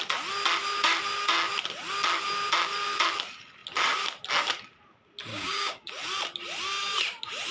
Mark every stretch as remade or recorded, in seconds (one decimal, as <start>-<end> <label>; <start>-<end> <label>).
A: 0.0-5.3 recorded; 5.3-5.9 remade; 5.9-7.5 recorded